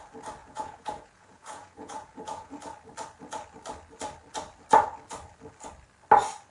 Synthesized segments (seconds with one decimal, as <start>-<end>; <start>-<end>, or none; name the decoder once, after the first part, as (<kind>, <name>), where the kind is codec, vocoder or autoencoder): 0.4-2.5 (vocoder, Vocos)